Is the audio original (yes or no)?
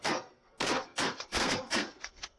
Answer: no